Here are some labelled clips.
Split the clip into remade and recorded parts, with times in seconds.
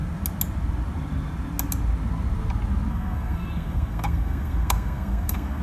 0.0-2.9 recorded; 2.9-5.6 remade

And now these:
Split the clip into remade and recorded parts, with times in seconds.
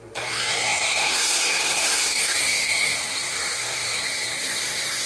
0.0-5.1 remade